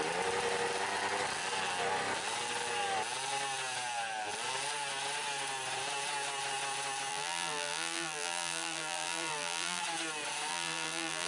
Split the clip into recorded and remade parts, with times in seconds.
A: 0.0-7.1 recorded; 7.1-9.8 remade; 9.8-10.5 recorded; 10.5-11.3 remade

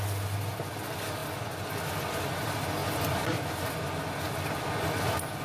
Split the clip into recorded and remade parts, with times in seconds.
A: 0.0-2.8 recorded; 2.8-3.5 remade; 3.5-5.4 recorded

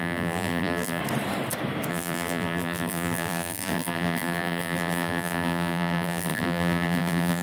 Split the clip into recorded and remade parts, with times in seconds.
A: 0.0-1.0 remade; 1.0-1.9 recorded; 1.9-7.4 remade

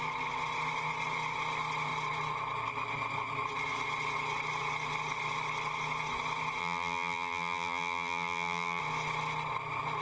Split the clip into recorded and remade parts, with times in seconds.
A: 0.0-6.6 recorded; 6.6-8.8 remade; 8.8-10.0 recorded